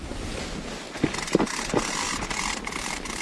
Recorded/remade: recorded